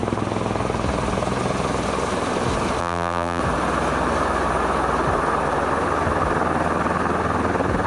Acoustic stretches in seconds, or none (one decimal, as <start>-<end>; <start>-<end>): 0.0-2.8; 3.4-7.9